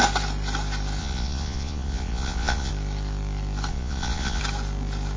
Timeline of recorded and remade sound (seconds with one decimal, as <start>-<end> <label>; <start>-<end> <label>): 0.0-1.0 recorded; 1.0-2.7 remade; 2.7-3.7 recorded; 3.7-4.4 remade; 4.4-5.2 recorded